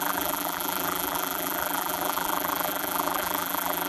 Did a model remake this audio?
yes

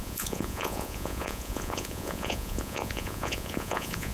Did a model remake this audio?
yes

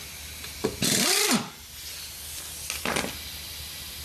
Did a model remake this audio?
no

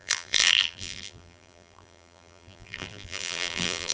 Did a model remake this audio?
yes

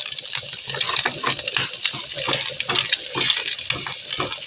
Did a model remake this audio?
no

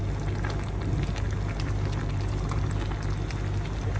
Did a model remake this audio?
no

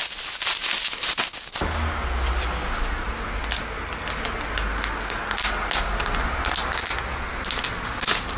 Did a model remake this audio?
no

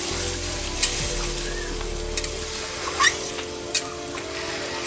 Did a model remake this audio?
no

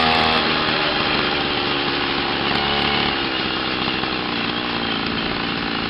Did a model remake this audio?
no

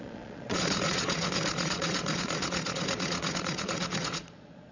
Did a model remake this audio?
yes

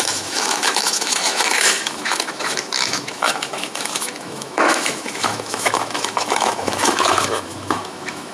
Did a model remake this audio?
yes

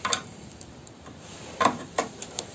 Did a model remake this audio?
no